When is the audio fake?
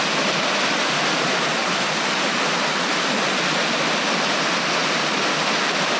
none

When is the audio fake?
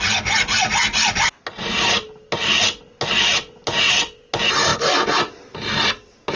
none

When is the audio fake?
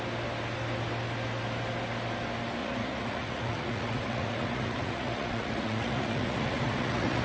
2.6-7.2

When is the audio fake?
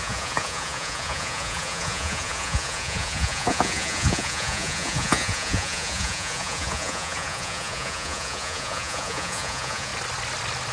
0.0-9.9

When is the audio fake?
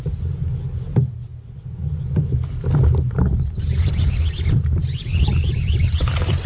none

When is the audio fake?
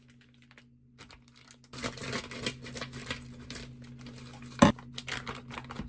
none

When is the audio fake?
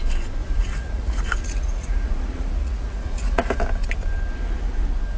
0.4-3.5